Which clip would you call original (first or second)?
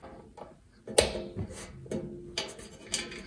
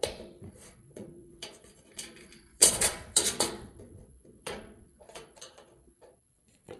first